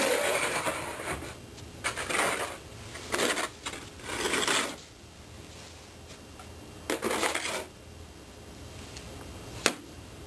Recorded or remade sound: recorded